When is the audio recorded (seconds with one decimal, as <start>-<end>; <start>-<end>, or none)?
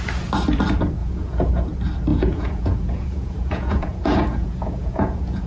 0.0-1.0; 1.5-2.1